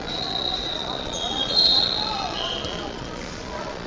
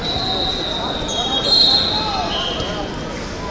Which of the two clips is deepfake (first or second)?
first